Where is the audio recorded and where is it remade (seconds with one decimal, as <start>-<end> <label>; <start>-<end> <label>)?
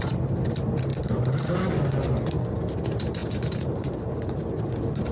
0.0-3.2 recorded; 3.2-4.4 remade; 4.4-5.1 recorded